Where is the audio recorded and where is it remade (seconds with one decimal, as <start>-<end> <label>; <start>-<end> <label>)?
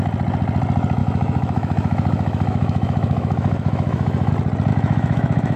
0.0-1.0 recorded; 1.0-4.3 remade; 4.3-4.7 recorded; 4.7-5.6 remade